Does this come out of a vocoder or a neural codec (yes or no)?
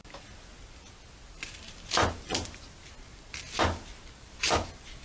no